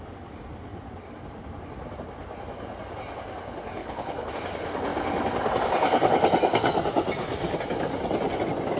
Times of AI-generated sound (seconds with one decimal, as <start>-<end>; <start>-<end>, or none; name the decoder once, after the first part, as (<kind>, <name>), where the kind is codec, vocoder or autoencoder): 3.8-4.3 (codec, HILCodec)